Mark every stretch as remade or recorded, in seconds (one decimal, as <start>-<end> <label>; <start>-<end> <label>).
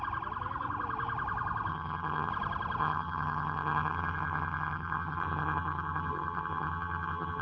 0.0-1.7 recorded; 1.7-2.3 remade; 2.3-2.8 recorded; 2.8-7.4 remade